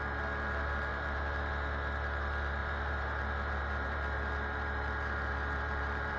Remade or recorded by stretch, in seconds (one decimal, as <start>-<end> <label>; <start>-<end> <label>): 0.0-0.9 recorded; 0.9-1.5 remade; 1.5-2.6 recorded; 2.6-6.2 remade